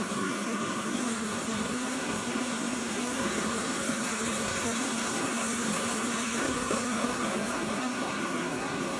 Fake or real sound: fake